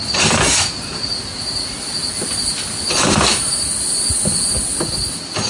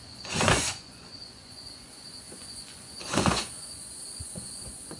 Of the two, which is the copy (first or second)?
second